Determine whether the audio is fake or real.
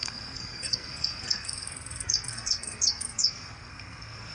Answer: fake